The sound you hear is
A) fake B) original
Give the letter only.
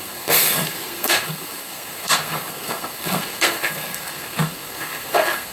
A